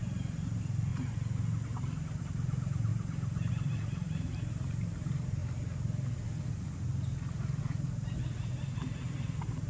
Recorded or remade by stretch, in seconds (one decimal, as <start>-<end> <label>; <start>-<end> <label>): 0.0-0.9 remade; 0.9-2.2 recorded; 2.2-2.9 remade; 2.9-3.5 recorded; 3.5-5.4 remade; 5.4-7.6 recorded; 7.6-9.7 remade